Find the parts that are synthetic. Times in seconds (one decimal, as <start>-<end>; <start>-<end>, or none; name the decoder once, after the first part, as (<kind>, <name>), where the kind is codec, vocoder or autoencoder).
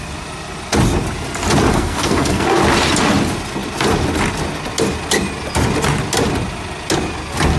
1.7-2.6 (codec, SNAC)